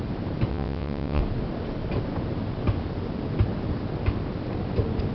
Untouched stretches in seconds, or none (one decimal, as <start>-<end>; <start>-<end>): 0.0-0.5; 1.2-5.1